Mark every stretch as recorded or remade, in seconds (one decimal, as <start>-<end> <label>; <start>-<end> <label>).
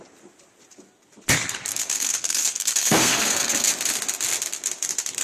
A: 0.0-1.7 recorded; 1.7-3.7 remade; 3.7-5.2 recorded